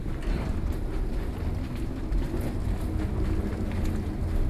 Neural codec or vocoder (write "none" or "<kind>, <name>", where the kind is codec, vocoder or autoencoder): none